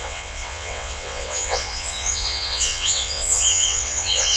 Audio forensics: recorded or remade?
remade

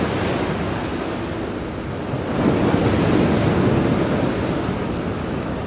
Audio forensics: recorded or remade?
recorded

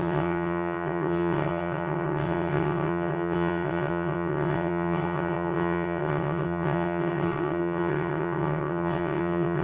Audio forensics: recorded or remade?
remade